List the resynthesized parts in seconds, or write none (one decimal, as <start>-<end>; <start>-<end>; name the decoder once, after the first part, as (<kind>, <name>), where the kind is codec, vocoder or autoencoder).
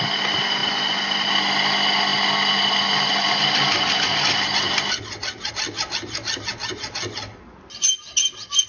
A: none